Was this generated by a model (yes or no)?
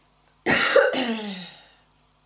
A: no